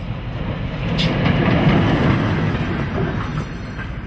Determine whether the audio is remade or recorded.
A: recorded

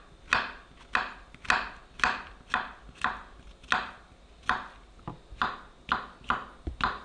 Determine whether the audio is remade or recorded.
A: recorded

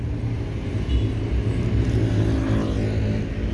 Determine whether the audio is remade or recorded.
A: recorded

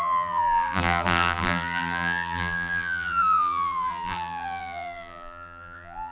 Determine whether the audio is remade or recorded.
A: remade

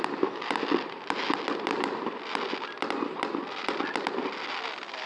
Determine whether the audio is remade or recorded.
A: recorded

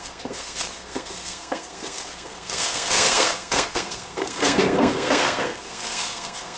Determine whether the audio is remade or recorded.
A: remade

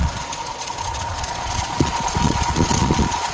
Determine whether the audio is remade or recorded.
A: remade